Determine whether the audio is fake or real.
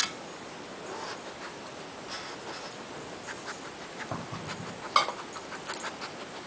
real